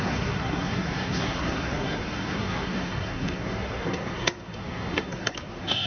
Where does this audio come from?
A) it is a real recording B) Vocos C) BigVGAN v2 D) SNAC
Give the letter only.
D